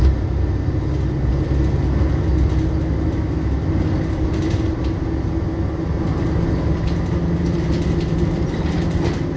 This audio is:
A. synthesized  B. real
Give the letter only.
B